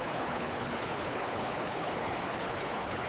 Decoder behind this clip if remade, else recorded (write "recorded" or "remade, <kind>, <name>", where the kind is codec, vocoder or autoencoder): remade, codec, HILCodec